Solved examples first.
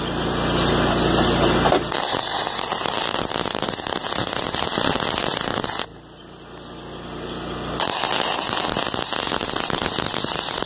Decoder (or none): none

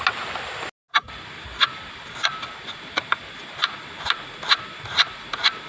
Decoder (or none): none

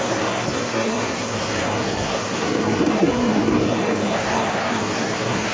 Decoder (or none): codec, SNAC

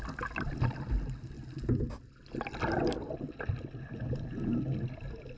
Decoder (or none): none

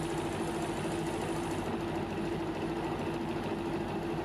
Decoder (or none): none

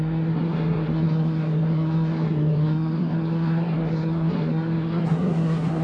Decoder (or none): codec, SNAC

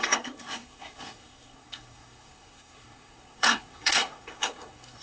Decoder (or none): codec, SNAC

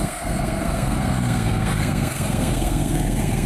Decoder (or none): codec, SNAC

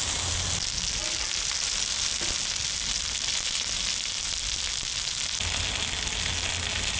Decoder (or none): none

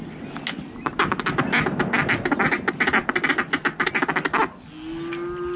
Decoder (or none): none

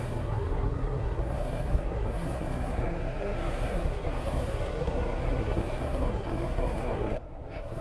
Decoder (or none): codec, SNAC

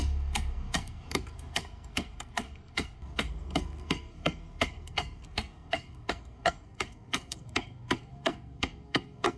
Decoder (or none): codec, SNAC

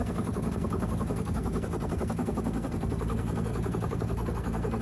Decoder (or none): codec, SNAC